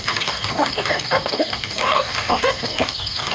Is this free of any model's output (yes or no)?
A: no